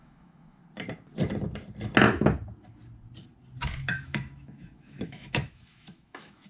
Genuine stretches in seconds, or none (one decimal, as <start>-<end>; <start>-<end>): 0.6-3.8